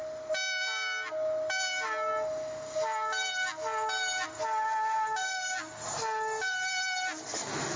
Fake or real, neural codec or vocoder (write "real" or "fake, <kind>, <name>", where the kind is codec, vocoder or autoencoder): real